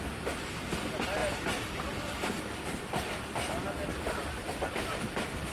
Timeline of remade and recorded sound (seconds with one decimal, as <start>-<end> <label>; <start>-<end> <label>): 0.0-5.5 recorded